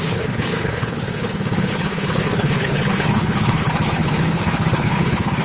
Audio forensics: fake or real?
fake